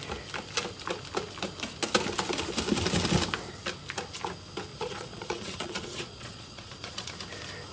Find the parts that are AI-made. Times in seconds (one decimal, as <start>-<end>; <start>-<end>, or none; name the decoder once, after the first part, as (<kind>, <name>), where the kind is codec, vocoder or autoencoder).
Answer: 4.7-7.1 (vocoder, Vocos)